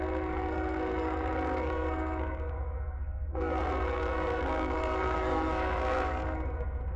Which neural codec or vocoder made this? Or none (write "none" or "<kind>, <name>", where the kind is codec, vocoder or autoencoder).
codec, SNAC